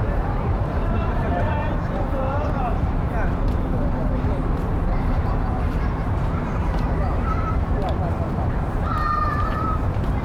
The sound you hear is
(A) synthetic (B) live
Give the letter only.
A